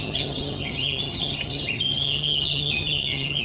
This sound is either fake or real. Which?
fake